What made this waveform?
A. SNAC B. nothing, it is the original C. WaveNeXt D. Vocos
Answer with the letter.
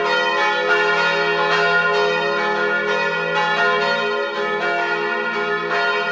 B